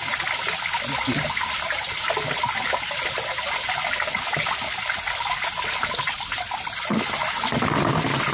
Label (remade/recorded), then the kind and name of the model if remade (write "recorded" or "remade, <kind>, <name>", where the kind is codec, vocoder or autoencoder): recorded